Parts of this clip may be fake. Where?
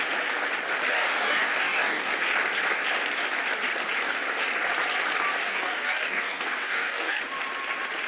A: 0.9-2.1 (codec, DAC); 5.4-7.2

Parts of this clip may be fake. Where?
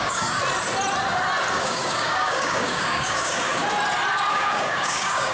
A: 0.0-0.4 (codec, DAC); 1.5-3.6; 4.3-5.3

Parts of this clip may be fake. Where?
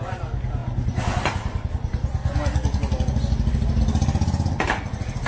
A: none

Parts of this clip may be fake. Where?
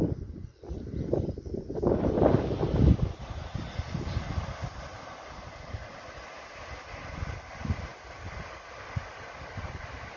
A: none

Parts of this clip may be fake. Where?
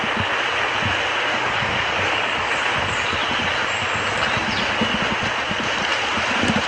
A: 1.3-2.5 (codec, DAC)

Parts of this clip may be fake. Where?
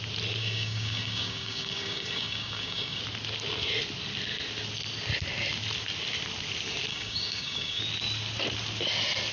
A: 0.4-3.0 (codec, DAC); 6.9-7.8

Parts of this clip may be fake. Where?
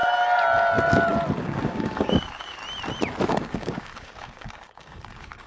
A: 1.4-2.6 (codec, DAC); 3.3-5.5